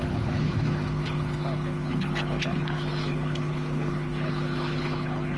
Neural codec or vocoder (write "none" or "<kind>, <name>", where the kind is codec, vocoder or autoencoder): codec, HILCodec